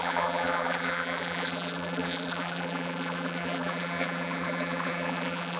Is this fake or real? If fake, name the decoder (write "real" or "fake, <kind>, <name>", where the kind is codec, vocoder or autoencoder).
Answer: fake, vocoder, BigVGAN v2